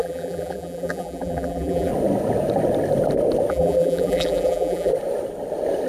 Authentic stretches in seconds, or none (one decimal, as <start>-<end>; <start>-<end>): 1.9-3.5; 4.9-5.9